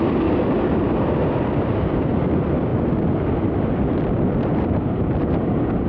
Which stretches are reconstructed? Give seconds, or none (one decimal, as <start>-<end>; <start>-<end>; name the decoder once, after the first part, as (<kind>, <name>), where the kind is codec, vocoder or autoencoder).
none